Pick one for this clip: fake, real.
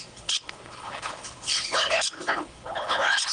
fake